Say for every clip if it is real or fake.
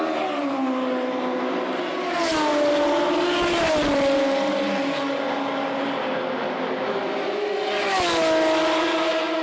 real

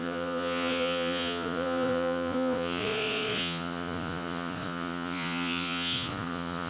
fake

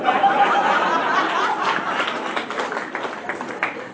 real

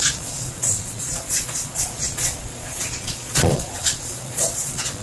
fake